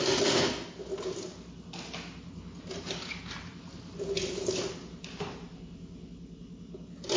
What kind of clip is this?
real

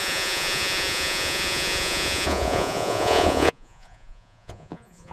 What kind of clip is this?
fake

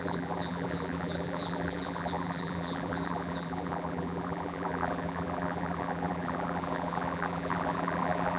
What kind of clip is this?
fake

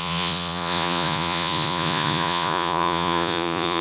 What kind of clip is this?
fake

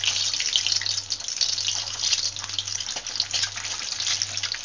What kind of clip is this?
real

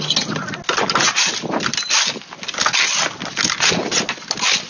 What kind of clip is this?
real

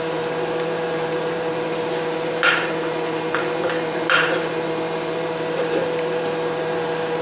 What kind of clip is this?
fake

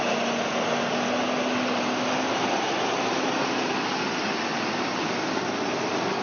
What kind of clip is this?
real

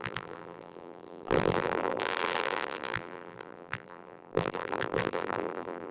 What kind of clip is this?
fake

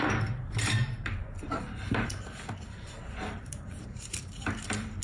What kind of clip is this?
fake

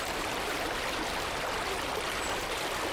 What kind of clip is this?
fake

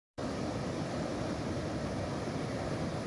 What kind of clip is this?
real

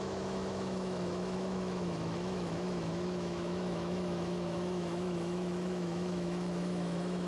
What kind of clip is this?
fake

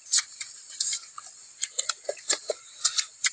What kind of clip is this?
fake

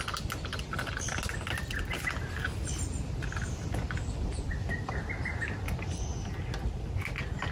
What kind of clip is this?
real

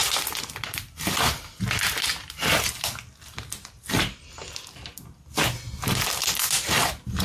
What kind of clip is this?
real